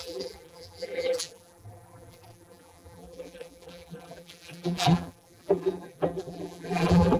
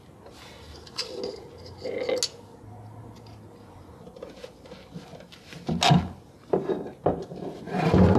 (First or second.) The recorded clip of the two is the second